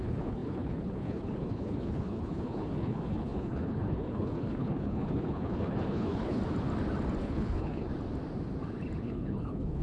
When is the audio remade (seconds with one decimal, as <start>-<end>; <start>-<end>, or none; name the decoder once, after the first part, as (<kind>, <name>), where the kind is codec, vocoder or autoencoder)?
0.0-6.4 (codec, HILCodec); 7.2-7.9; 9.0-9.8